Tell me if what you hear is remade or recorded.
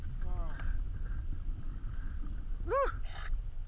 recorded